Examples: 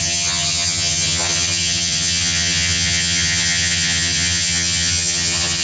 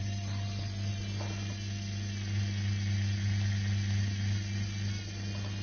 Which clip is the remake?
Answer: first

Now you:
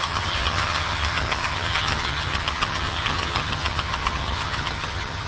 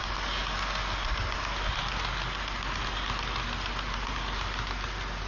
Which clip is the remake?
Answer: first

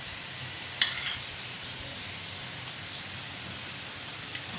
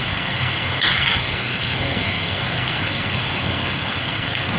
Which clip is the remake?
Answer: second